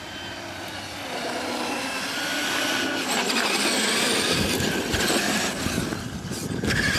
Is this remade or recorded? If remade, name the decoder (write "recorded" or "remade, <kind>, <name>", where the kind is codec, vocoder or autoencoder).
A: recorded